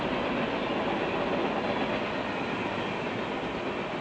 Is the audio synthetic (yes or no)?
no